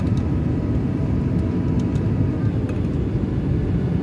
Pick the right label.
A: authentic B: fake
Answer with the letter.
A